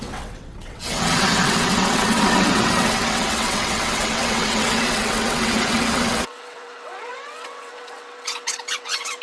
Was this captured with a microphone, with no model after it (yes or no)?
no